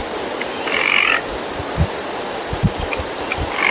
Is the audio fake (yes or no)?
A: no